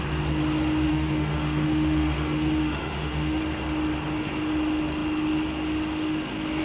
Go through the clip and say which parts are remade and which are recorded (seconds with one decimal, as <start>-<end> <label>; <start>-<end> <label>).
0.0-0.9 recorded; 0.9-3.4 remade; 3.4-6.6 recorded